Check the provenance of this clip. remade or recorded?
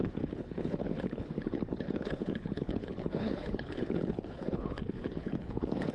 remade